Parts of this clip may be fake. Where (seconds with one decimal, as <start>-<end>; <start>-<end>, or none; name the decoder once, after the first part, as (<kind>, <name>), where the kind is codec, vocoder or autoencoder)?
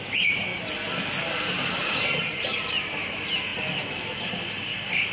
0.0-0.5 (vocoder, BigVGAN v2); 1.2-3.5; 4.5-5.1